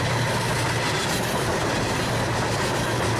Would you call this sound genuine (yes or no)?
yes